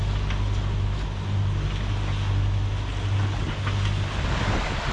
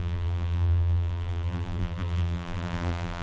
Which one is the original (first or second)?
first